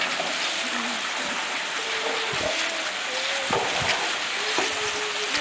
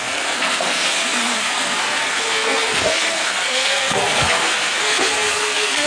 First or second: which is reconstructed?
second